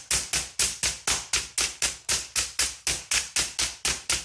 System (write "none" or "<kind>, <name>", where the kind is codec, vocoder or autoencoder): none